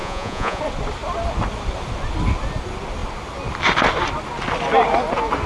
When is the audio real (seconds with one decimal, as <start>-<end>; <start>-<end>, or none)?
0.6-5.5

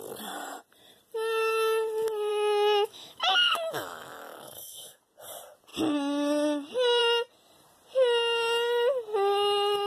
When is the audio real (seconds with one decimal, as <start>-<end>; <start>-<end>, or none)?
0.0-2.3; 5.0-9.9